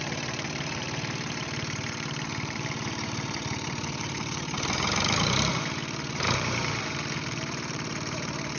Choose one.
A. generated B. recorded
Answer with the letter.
A